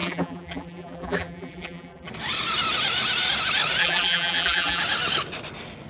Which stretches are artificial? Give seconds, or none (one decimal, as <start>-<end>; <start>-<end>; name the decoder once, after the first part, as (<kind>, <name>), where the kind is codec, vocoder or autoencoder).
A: 0.0-2.1 (vocoder, BigVGAN v2); 3.8-4.8